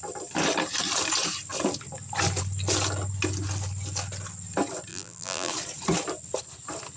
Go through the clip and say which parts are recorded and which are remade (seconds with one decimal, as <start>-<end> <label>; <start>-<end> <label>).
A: 0.0-4.9 recorded; 4.9-5.5 remade; 5.5-7.0 recorded